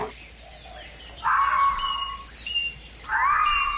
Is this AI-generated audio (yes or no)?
no